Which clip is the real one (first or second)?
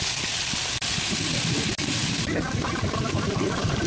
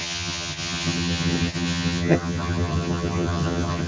first